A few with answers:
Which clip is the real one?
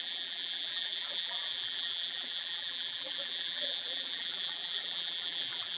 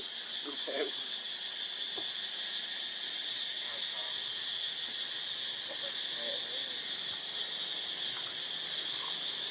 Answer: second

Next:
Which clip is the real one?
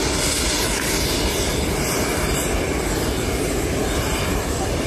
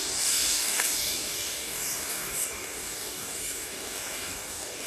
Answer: first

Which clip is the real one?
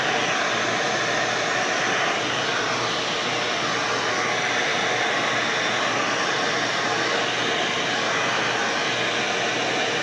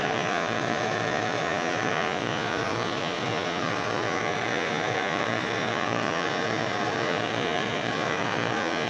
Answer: first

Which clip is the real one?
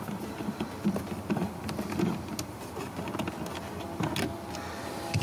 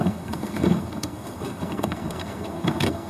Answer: first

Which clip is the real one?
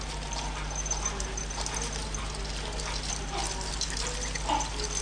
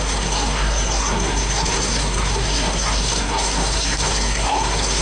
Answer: first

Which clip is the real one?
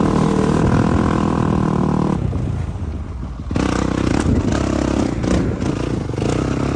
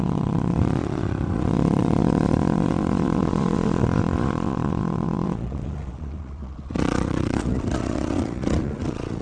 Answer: first